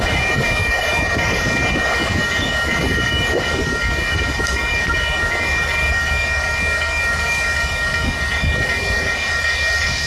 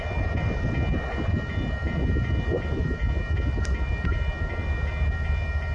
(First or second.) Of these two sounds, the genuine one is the second